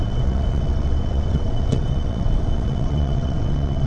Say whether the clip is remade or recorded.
remade